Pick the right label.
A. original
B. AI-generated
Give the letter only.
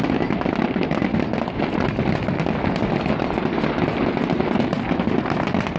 A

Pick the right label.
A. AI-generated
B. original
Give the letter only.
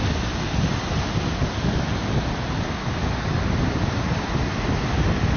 B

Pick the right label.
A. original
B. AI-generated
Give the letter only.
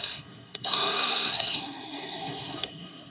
B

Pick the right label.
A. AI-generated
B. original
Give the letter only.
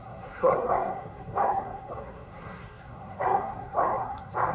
A